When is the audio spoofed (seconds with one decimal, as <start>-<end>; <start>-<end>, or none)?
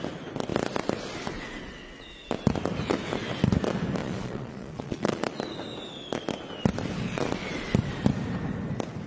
4.0-5.4